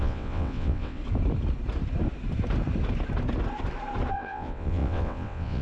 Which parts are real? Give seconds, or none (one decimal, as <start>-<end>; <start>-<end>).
1.0-4.1